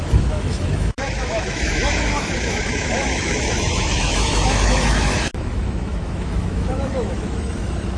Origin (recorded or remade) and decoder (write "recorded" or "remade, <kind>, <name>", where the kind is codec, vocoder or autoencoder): remade, autoencoder, DAC-VAE